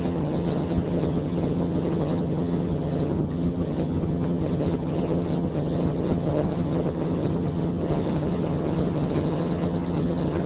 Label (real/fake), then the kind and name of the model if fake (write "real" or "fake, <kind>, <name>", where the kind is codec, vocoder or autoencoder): fake, vocoder, HiFi-GAN